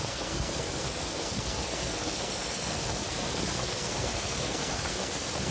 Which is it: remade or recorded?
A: remade